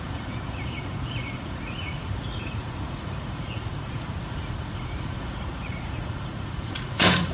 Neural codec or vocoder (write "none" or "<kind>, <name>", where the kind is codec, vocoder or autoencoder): vocoder, Vocos